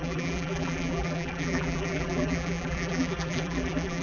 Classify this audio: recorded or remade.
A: remade